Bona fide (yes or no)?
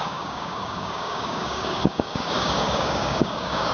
no